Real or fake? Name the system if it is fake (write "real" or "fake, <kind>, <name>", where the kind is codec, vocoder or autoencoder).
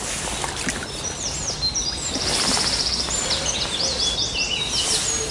real